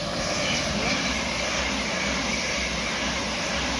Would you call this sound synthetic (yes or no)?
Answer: no